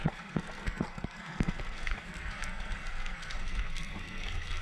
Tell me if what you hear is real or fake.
fake